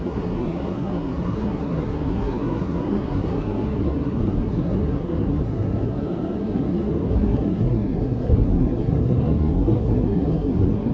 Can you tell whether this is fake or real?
fake